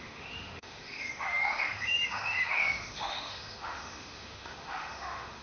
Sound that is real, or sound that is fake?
fake